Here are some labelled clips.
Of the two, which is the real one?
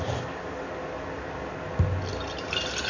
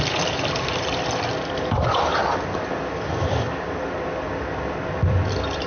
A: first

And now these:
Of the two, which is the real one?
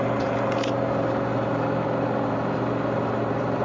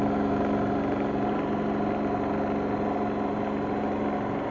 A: second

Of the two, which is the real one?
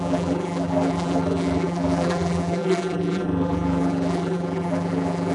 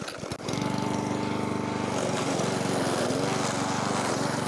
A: second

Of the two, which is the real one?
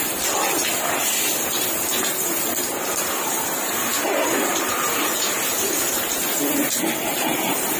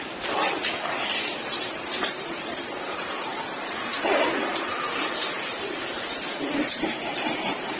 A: first